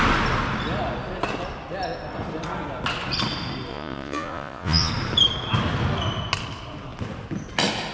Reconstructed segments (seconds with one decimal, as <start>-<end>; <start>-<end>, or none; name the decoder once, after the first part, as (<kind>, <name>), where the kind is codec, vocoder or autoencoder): 3.7-4.9 (vocoder, Vocos)